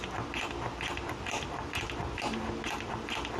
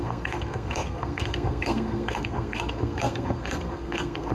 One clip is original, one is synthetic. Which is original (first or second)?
first